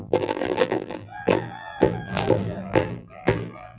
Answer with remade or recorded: remade